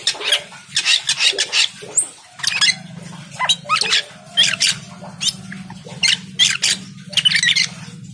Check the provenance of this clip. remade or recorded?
recorded